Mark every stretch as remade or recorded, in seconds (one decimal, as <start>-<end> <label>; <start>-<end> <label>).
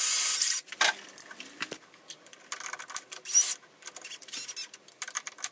0.0-5.5 recorded